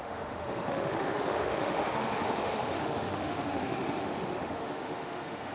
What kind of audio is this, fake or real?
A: fake